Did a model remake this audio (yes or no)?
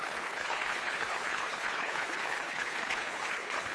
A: yes